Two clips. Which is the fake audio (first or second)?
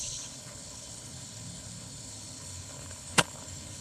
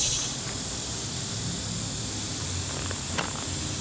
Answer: first